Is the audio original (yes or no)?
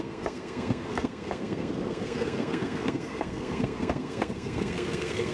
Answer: no